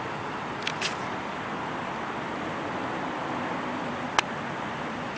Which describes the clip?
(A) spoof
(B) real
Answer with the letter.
B